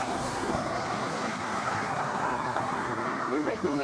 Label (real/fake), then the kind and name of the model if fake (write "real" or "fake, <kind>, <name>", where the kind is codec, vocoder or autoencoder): fake, codec, SNAC